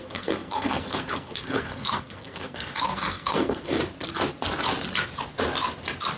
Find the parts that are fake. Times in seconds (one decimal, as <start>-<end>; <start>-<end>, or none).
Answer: 0.0-3.8